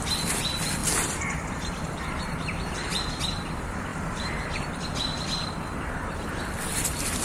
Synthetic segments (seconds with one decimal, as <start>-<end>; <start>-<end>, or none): 0.8-3.1; 3.9-6.2

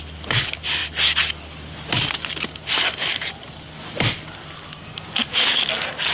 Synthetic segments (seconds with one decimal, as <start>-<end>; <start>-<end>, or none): none

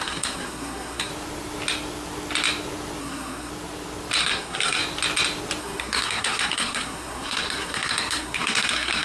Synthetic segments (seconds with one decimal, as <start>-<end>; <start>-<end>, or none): 0.0-1.1; 3.0-3.5; 4.2-4.8; 5.6-9.0